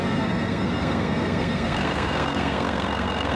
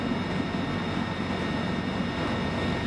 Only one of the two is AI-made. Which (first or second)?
first